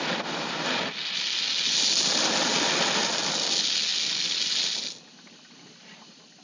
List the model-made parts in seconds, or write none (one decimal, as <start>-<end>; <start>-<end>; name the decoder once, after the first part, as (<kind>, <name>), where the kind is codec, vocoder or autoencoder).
none